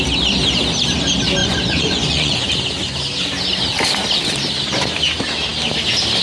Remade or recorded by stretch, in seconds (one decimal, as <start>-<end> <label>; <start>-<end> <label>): 0.0-1.4 recorded; 1.4-2.5 remade; 2.5-6.2 recorded